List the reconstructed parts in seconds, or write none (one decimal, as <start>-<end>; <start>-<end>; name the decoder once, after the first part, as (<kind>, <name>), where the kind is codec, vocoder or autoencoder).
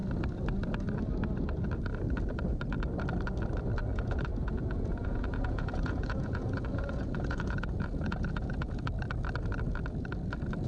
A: 3.9-8.9 (vocoder, Vocos)